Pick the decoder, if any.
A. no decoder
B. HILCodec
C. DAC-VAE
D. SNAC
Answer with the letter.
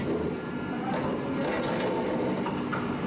A